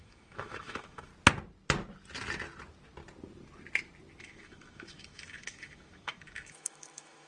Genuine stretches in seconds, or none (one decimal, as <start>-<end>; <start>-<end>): 1.1-4.2